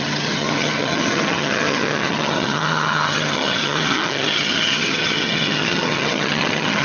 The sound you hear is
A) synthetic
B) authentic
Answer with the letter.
A